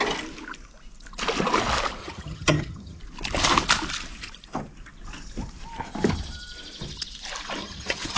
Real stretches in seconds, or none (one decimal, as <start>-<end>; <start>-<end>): 0.0-2.0; 3.0-7.6